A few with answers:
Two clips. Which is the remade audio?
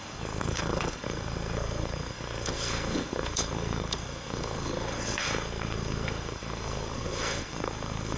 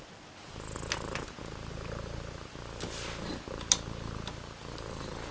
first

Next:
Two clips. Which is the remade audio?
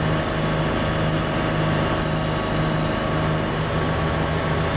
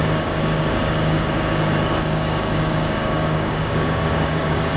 second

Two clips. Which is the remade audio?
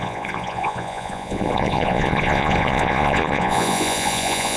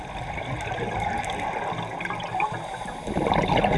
first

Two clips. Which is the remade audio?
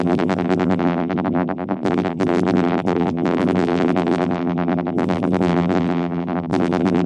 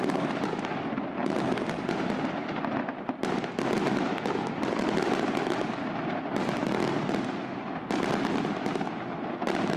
first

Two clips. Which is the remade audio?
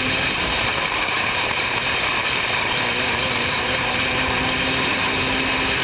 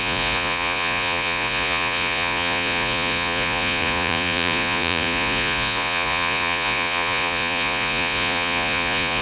second